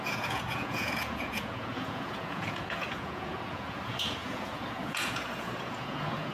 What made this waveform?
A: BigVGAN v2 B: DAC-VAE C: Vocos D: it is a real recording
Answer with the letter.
C